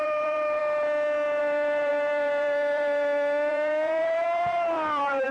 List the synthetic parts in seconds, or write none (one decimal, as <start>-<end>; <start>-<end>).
0.0-0.6; 1.4-5.3